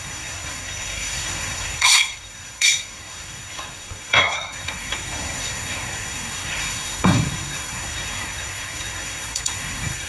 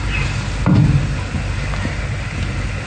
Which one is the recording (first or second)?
second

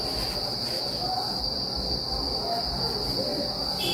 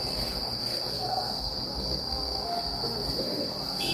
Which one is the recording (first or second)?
first